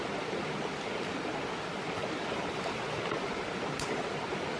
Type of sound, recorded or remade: recorded